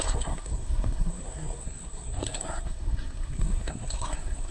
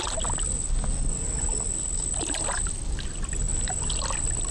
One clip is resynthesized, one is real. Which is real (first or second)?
second